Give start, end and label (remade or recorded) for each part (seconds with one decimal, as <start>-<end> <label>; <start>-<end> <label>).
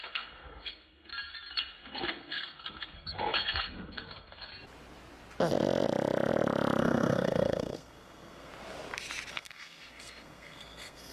0.0-1.1 remade; 1.1-1.7 recorded; 1.7-4.5 remade; 4.5-6.8 recorded; 6.8-8.5 remade; 8.5-9.3 recorded; 9.3-11.1 remade